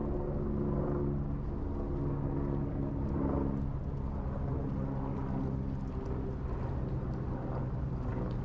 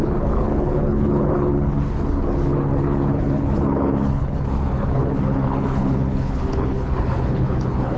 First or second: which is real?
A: first